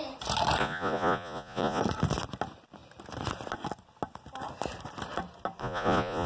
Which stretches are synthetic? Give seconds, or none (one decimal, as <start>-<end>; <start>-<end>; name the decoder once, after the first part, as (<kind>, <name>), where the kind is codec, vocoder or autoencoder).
0.6-1.8 (vocoder, Vocos); 5.6-6.3